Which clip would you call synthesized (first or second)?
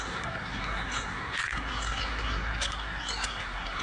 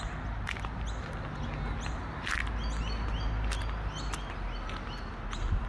first